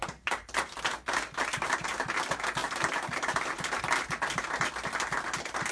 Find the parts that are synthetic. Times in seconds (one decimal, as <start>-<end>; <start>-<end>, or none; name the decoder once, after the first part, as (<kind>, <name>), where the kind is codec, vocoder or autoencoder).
0.0-0.8 (vocoder, BigVGAN v2); 2.6-3.8

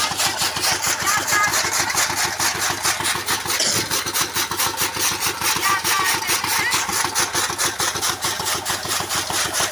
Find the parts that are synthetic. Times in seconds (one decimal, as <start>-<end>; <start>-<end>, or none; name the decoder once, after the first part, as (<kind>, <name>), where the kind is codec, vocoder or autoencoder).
0.0-1.5 (vocoder, BigVGAN v2); 5.6-6.9; 8.0-9.7

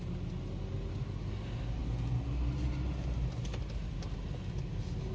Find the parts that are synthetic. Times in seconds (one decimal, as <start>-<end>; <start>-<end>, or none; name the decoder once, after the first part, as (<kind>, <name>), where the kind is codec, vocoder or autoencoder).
none

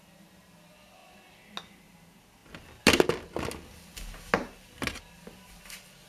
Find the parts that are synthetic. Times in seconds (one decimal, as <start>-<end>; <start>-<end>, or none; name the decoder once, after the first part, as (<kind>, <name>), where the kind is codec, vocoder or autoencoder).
none

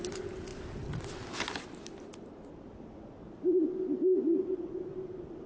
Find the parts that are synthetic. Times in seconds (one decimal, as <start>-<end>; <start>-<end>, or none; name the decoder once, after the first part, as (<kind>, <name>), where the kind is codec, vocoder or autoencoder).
0.0-0.5 (vocoder, BigVGAN v2); 3.8-5.5

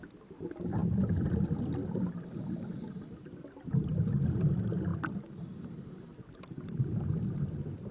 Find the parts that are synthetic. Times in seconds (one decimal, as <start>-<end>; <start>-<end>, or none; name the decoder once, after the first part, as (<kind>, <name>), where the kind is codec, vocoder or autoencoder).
none